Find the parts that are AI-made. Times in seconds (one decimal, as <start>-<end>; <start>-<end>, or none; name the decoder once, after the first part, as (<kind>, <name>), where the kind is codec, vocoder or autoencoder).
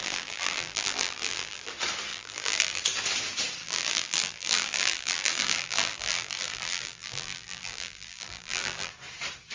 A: 0.0-1.7 (vocoder, BigVGAN v2); 2.1-2.8; 3.6-8.9